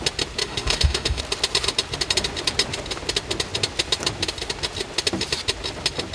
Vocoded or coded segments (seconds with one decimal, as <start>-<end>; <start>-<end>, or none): 0.4-1.2